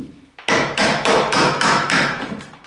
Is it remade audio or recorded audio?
remade